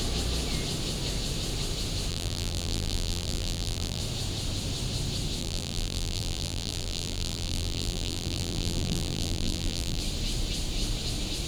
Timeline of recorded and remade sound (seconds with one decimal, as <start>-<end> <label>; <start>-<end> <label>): 0.0-2.1 recorded; 2.1-4.0 remade; 4.0-5.4 recorded; 5.4-10.0 remade; 10.0-11.5 recorded